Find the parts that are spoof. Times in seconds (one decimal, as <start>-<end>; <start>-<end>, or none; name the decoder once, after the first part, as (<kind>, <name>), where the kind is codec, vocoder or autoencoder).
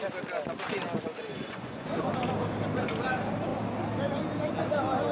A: 1.3-1.9 (vocoder, Vocos)